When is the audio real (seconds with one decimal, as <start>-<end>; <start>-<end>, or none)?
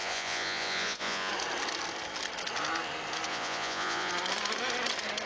1.3-3.3; 4.1-5.3